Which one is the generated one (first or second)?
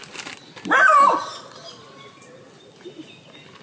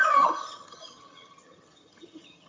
second